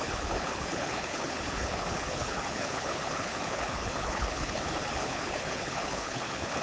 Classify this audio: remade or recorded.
remade